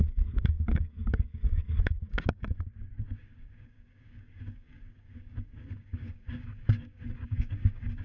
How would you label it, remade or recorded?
remade